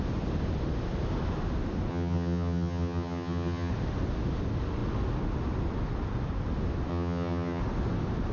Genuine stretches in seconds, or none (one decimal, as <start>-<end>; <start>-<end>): 0.0-1.9; 3.7-6.9; 7.6-8.3